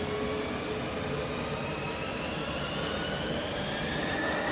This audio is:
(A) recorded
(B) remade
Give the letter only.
A